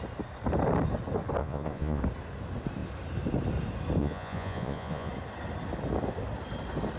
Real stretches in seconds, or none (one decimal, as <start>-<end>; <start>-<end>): 0.0-1.4; 2.0-4.0; 5.1-7.0